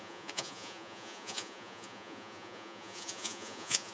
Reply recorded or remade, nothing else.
remade